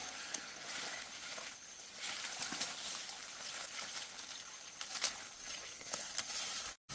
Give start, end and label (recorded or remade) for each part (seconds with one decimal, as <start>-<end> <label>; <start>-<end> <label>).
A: 0.0-0.7 remade; 0.7-5.6 recorded; 5.6-6.1 remade; 6.1-6.9 recorded